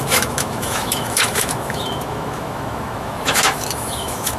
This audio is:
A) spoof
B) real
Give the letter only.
A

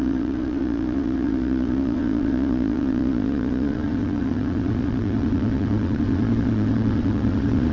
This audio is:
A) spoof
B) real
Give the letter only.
A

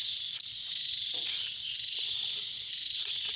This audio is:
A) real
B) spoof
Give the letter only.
B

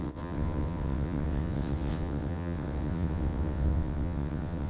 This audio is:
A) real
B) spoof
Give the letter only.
B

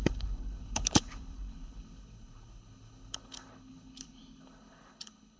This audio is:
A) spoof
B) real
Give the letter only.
A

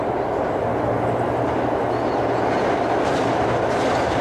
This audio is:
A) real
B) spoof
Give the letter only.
A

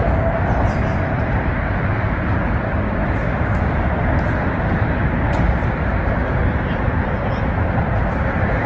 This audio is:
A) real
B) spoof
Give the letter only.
A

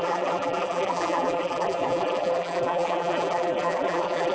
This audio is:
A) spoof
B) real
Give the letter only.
A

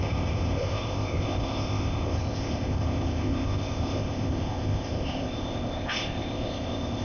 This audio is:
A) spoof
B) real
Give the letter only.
A